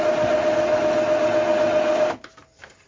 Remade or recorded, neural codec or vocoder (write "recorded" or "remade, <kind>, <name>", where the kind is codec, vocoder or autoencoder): recorded